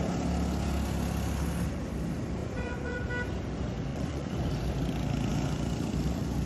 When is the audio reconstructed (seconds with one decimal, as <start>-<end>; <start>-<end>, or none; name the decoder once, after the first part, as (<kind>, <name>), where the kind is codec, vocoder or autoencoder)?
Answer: 2.4-3.1 (vocoder, Vocos); 3.9-4.5